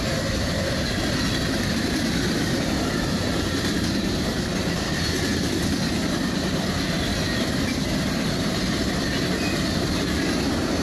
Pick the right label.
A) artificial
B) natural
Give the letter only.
B